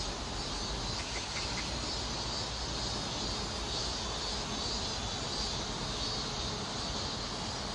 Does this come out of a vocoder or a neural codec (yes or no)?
no